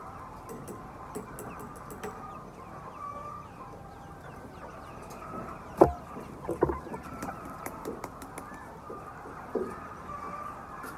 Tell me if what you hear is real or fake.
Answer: real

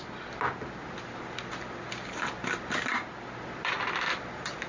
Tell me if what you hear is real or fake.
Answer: real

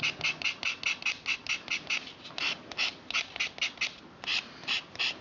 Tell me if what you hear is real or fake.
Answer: real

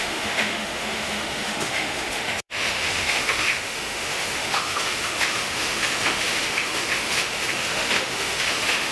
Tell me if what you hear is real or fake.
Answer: fake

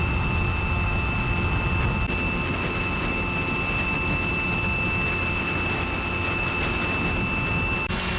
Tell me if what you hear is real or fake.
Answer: real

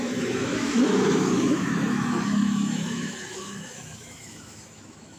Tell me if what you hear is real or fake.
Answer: fake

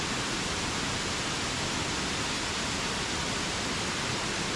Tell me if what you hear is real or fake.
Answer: real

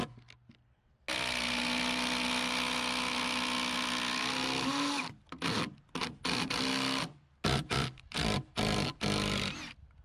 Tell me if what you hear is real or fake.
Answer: real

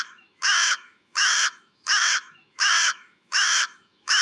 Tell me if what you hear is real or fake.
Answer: fake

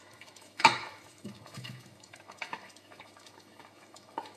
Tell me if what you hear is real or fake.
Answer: fake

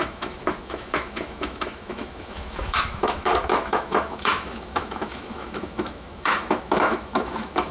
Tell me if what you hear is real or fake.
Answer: fake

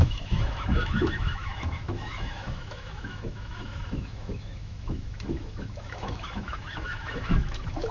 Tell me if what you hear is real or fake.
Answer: fake